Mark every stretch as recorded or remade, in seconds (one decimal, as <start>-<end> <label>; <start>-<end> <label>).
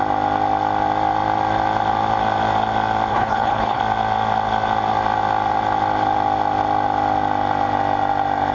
0.0-3.1 recorded; 3.1-3.8 remade; 3.8-8.5 recorded